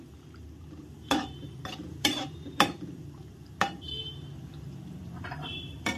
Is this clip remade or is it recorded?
remade